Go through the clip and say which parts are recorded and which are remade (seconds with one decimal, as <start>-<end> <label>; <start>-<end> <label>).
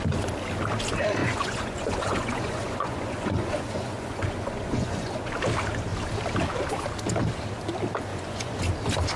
0.0-1.2 recorded; 1.2-5.3 remade; 5.3-8.1 recorded; 8.1-8.6 remade; 8.6-9.2 recorded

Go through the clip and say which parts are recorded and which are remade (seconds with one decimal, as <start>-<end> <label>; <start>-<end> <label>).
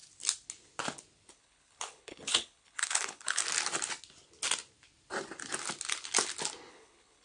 0.0-1.3 recorded; 1.3-3.4 remade; 3.4-6.7 recorded; 6.7-7.2 remade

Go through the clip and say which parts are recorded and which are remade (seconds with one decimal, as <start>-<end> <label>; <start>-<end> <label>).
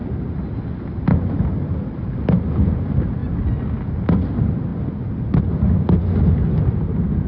0.0-7.3 recorded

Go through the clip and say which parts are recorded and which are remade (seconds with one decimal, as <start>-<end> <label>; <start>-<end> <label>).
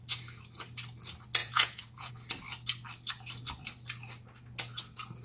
0.0-1.4 recorded; 1.4-2.1 remade; 2.1-5.2 recorded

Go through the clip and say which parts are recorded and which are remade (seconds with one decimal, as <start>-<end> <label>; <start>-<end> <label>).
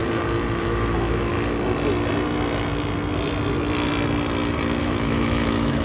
0.0-0.6 recorded; 0.6-1.3 remade; 1.3-4.8 recorded; 4.8-5.8 remade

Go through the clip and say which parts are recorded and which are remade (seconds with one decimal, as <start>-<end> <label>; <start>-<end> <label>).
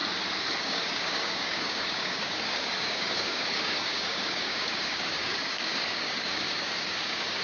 0.0-0.6 recorded; 0.6-7.4 remade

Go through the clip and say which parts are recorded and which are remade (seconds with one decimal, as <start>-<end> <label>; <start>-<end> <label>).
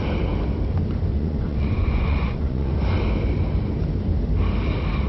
0.0-1.1 recorded; 1.1-2.7 remade; 2.7-5.1 recorded